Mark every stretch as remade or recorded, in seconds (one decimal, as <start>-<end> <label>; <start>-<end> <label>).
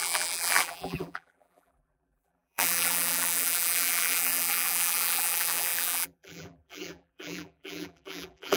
0.0-8.6 remade